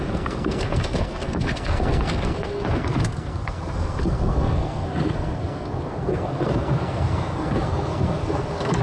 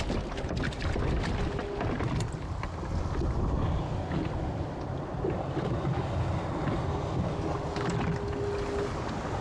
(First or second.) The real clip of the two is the second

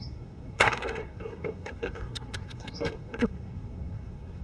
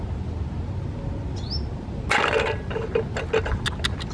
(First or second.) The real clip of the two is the second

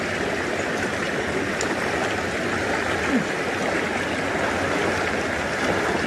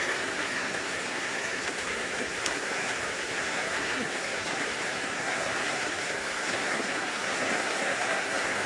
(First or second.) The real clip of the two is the first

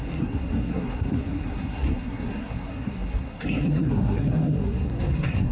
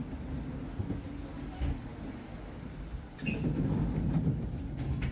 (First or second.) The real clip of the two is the second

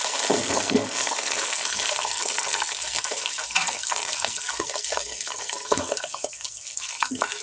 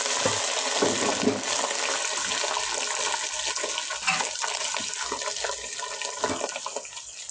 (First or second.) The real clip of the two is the second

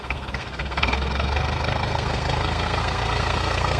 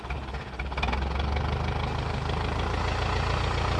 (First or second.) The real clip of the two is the second